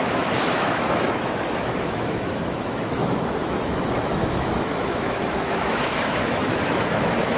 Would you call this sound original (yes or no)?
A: no